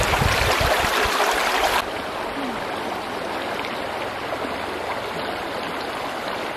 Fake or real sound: real